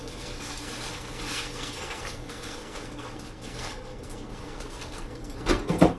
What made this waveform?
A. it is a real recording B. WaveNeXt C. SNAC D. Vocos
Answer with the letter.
C